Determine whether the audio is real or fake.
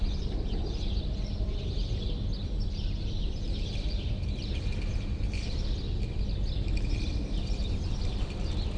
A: real